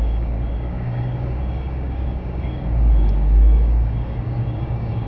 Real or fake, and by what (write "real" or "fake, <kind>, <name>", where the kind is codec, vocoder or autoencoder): fake, codec, DAC